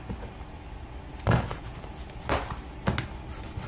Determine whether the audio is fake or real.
real